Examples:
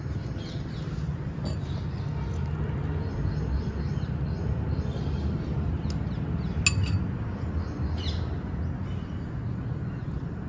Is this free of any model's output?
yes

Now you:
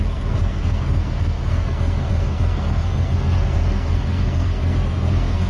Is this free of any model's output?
no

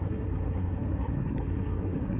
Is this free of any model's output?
no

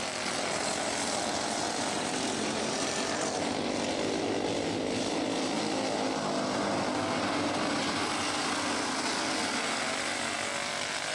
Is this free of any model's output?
yes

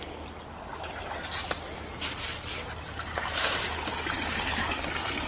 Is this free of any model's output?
yes